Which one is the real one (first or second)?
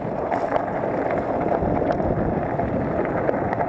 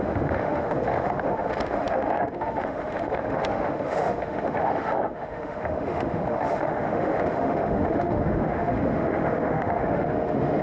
first